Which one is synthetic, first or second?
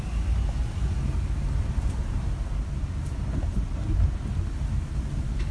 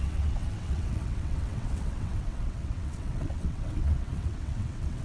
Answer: second